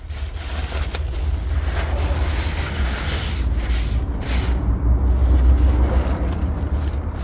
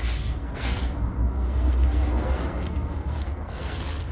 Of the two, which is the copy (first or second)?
second